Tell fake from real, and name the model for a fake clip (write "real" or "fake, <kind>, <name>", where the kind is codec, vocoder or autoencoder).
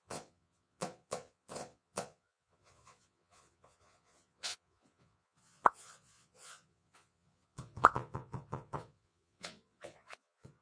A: fake, vocoder, Vocos